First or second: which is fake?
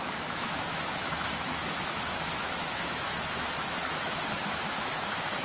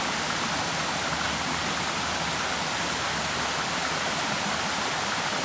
first